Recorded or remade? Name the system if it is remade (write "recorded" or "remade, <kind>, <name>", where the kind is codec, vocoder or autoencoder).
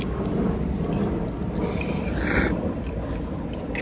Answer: recorded